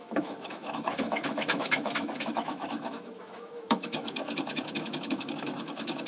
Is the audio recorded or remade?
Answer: remade